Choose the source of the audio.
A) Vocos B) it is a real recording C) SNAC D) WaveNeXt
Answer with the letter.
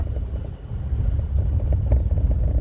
B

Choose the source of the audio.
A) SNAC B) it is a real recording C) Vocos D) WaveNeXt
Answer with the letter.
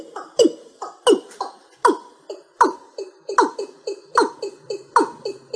B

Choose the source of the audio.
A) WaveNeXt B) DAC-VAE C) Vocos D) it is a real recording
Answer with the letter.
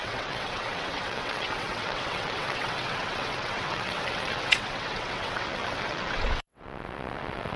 A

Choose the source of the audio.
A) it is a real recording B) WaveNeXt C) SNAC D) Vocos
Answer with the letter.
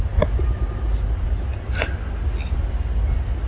A